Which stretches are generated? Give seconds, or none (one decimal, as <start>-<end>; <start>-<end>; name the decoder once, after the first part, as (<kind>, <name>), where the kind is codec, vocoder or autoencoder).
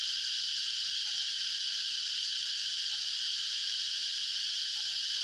3.1-3.8 (vocoder, BigVGAN v2)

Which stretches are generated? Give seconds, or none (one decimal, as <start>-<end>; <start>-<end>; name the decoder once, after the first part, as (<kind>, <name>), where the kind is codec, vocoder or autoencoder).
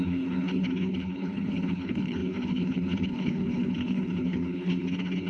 0.0-5.3 (codec, HILCodec)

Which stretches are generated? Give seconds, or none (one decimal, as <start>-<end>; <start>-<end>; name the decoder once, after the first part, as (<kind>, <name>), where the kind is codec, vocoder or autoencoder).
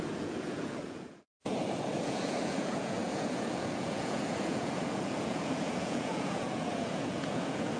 0.0-7.8 (vocoder, Vocos)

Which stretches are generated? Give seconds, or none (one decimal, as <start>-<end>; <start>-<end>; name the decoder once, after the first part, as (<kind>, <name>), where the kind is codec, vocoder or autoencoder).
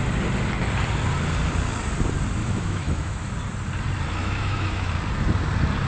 2.4-3.3 (autoencoder, DAC-VAE); 4.2-4.9